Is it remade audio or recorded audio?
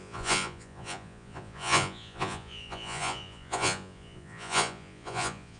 remade